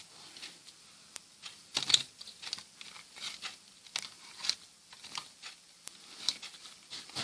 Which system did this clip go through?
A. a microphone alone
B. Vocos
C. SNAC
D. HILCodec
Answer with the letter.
A